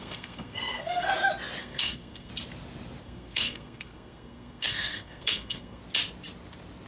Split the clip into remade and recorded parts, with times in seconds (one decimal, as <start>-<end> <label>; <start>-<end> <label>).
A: 0.0-1.1 remade; 1.1-1.6 recorded; 1.6-2.3 remade; 2.3-3.0 recorded; 3.0-5.8 remade; 5.8-6.9 recorded